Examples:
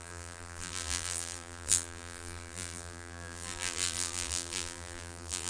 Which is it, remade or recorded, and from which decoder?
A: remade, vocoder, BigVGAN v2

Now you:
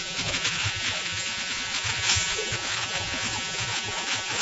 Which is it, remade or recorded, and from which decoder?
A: remade, vocoder, Vocos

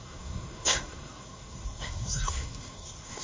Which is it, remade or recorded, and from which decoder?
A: remade, codec, SNAC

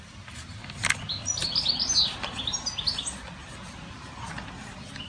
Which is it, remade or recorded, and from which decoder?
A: recorded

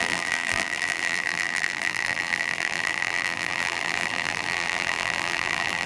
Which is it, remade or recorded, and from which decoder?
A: remade, vocoder, BigVGAN v2